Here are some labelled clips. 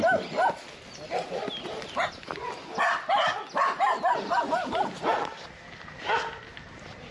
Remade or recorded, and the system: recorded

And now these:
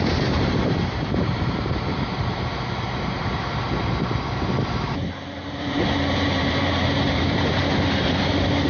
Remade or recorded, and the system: remade, vocoder, BigVGAN v2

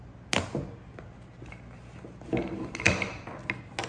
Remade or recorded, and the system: recorded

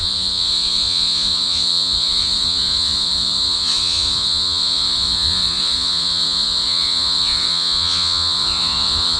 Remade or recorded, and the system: remade, vocoder, Vocos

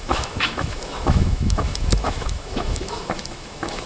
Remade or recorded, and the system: remade, autoencoder, DAC-VAE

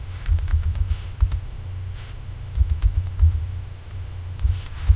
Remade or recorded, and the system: remade, autoencoder, DAC-VAE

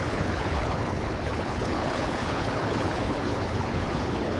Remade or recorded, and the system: remade, codec, HILCodec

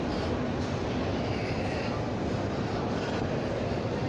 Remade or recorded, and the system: recorded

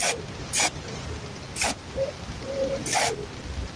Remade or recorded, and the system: recorded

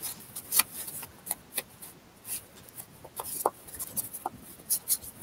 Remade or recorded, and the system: recorded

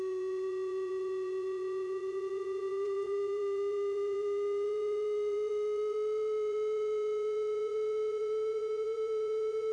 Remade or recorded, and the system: remade, vocoder, Vocos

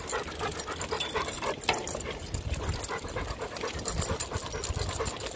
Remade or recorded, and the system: recorded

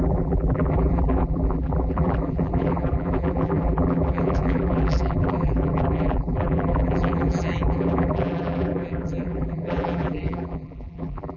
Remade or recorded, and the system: remade, vocoder, BigVGAN v2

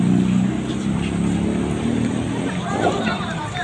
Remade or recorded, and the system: recorded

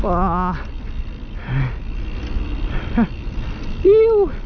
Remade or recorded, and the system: recorded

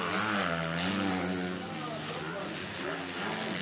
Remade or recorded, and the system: recorded